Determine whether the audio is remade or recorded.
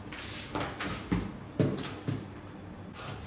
recorded